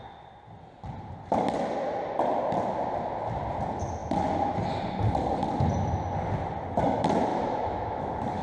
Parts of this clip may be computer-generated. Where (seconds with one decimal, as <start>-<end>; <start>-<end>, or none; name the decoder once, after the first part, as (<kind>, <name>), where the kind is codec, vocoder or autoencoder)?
7.3-8.4 (autoencoder, DAC-VAE)